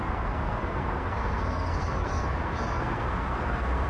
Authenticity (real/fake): fake